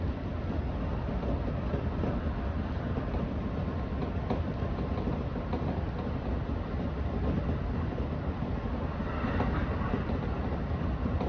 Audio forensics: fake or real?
real